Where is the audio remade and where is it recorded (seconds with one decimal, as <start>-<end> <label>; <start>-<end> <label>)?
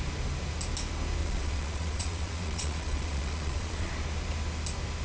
0.0-1.2 recorded; 1.2-3.9 remade; 3.9-5.0 recorded